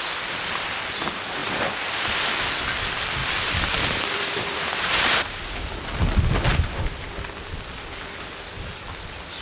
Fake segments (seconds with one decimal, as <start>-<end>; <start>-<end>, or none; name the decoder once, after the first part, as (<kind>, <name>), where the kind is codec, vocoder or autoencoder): 3.2-5.4 (vocoder, BigVGAN v2)